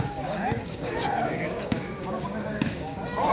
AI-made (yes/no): yes